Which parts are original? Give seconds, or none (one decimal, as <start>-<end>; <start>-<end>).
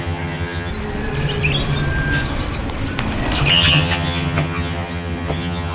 0.7-3.5